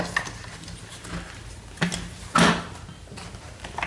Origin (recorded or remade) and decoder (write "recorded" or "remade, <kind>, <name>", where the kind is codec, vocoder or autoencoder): recorded